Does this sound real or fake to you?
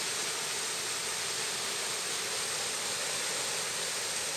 real